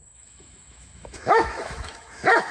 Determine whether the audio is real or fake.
fake